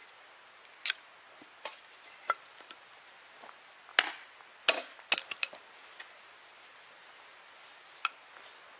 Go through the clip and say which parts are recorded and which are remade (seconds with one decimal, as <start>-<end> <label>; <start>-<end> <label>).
0.0-8.8 recorded